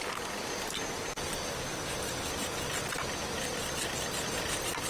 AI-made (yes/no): no